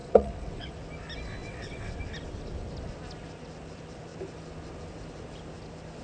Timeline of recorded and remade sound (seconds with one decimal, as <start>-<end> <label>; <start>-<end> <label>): 0.0-0.7 remade; 0.7-1.4 recorded; 1.4-2.0 remade; 2.0-6.0 recorded